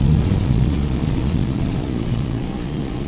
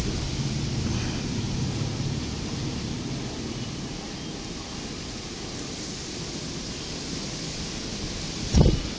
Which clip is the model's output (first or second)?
first